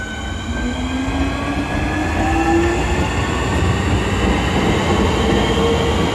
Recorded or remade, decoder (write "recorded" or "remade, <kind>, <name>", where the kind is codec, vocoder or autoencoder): recorded